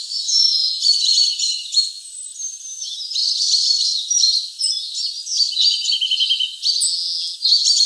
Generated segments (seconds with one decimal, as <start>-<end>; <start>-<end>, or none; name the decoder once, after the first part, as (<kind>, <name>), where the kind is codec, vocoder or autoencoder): 3.2-4.6 (vocoder, BigVGAN v2)